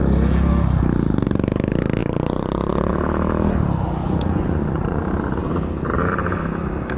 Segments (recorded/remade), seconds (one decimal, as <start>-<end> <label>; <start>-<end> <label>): 0.0-2.0 recorded; 2.0-2.9 remade; 2.9-4.0 recorded; 4.0-5.0 remade; 5.0-7.0 recorded